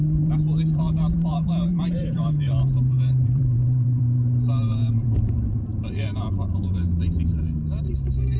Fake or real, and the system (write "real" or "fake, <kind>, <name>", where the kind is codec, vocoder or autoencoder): fake, vocoder, BigVGAN v2